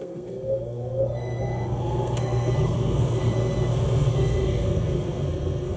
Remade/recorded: remade